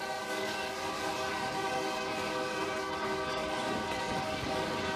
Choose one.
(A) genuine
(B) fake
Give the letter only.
B